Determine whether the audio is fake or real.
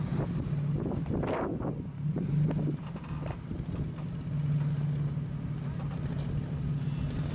real